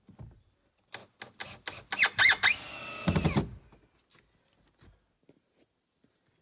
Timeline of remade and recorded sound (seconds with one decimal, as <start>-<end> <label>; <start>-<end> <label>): 0.0-6.4 recorded